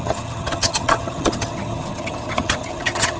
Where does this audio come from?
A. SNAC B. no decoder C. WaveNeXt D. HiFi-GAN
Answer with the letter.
D